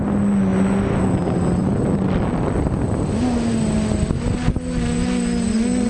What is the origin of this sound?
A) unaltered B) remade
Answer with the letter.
A